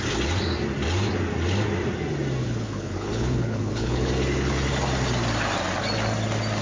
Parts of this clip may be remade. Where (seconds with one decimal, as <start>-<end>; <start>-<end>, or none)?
2.4-4.1

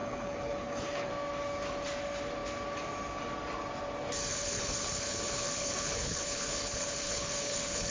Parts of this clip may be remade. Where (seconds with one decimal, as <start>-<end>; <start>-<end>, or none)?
0.0-1.1; 4.3-7.9

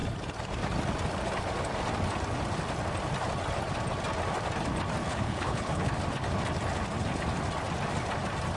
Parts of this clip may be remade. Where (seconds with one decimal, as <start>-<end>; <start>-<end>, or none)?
5.1-5.9

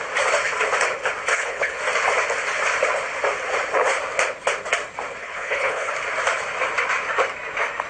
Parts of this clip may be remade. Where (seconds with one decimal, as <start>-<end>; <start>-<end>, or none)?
1.3-1.8; 5.2-5.9